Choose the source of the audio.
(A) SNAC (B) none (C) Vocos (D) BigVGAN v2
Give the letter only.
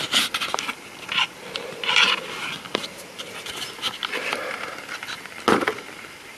B